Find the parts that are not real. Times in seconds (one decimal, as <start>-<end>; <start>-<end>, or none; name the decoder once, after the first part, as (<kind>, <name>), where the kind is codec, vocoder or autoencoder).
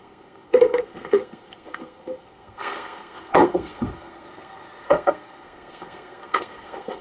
0.0-7.0 (codec, SNAC)